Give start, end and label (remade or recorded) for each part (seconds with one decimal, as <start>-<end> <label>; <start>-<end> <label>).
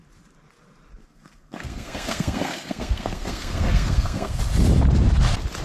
0.0-1.0 recorded; 1.0-4.4 remade; 4.4-5.6 recorded